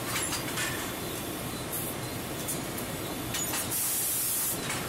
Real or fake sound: real